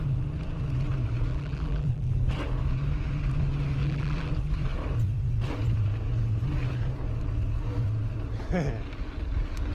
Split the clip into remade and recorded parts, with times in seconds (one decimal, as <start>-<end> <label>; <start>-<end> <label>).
0.0-1.3 recorded; 1.3-2.2 remade; 2.2-3.8 recorded; 3.8-4.3 remade; 4.3-9.7 recorded